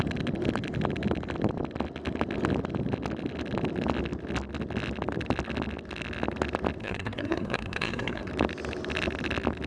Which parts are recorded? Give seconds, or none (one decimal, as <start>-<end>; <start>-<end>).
0.0-6.8; 8.3-9.7